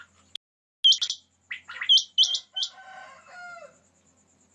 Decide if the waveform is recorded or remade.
recorded